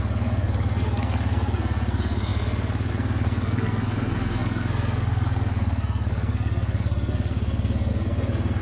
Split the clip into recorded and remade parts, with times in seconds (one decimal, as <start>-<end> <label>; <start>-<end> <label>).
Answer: 0.0-8.6 remade